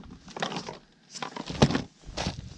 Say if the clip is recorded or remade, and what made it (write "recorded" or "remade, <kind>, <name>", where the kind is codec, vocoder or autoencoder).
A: recorded